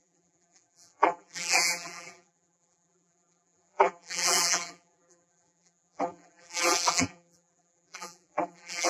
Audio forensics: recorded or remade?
remade